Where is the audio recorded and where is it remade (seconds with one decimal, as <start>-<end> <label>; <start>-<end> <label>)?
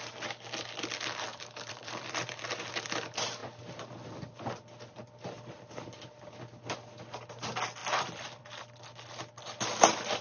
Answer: 0.0-1.3 recorded; 1.3-2.7 remade; 2.7-7.8 recorded; 7.8-8.4 remade; 8.4-10.2 recorded